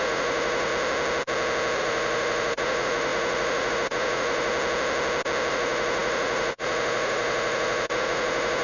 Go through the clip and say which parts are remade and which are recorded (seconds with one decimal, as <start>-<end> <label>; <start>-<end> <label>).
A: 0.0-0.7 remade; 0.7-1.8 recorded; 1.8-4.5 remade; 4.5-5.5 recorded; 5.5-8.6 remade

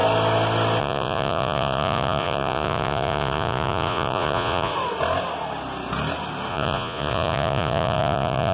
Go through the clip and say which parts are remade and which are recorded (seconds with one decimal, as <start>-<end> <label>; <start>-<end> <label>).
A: 0.0-0.8 recorded; 0.8-4.7 remade; 4.7-6.5 recorded; 6.5-8.5 remade

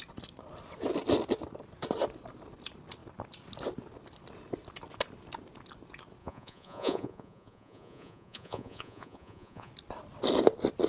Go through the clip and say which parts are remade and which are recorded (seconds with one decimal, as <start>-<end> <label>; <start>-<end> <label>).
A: 0.0-6.2 recorded; 6.2-9.7 remade; 9.7-10.9 recorded

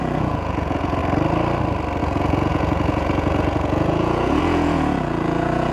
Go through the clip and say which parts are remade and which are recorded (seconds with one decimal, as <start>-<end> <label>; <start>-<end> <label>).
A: 0.0-1.0 remade; 1.0-2.0 recorded; 2.0-5.7 remade

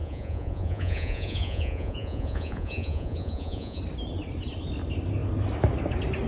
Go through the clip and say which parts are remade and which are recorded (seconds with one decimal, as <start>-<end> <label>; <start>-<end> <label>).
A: 0.0-3.8 remade; 3.8-6.3 recorded

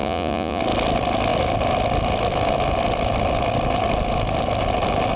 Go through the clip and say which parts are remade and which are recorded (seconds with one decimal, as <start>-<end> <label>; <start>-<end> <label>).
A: 0.0-0.6 remade; 0.6-5.2 recorded